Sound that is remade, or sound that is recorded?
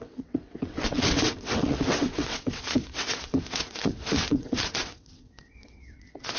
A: remade